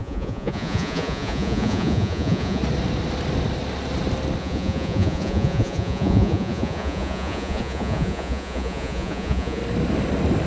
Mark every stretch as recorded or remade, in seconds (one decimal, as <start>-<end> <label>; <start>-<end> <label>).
0.0-2.6 remade; 2.6-4.4 recorded; 4.4-9.6 remade; 9.6-10.5 recorded